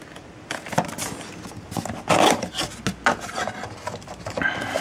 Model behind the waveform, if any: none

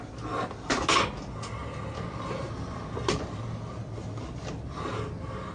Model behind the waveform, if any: none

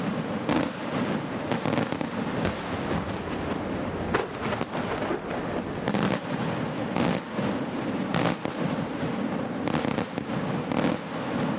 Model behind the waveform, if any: none